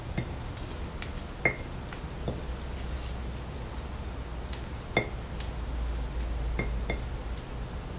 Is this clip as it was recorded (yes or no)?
yes